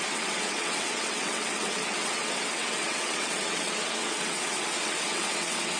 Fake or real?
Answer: fake